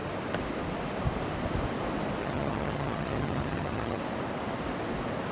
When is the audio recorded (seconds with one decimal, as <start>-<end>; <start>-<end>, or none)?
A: 0.0-2.2; 4.0-5.3